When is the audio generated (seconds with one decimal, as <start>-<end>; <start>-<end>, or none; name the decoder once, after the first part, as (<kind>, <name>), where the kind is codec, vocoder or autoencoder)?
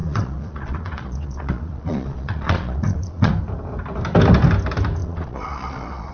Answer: 0.0-3.3 (vocoder, Vocos); 5.0-6.1